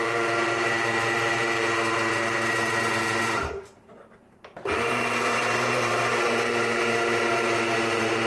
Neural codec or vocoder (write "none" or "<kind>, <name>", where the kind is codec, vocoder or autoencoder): vocoder, BigVGAN v2